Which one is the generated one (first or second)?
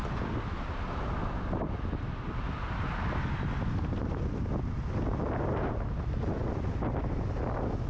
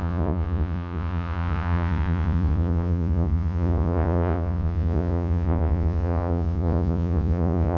second